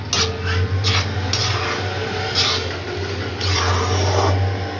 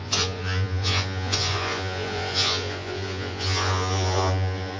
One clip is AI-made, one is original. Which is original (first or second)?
first